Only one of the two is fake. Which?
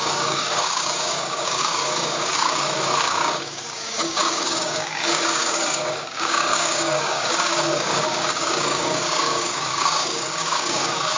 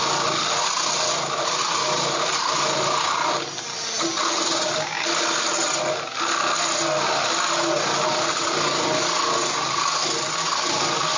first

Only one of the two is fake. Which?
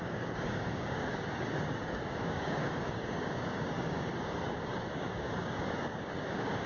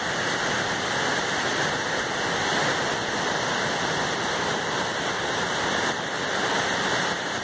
first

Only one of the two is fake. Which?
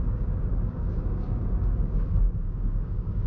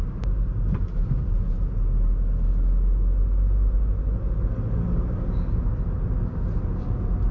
first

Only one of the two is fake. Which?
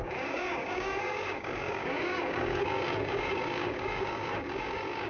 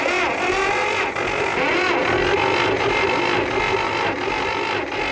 first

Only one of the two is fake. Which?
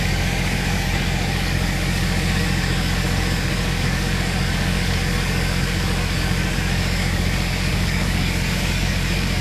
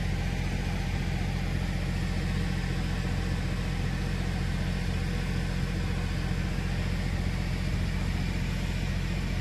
first